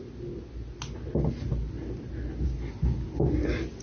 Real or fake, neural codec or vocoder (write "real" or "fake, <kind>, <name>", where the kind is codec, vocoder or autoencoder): real